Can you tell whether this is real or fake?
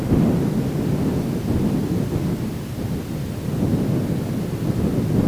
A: real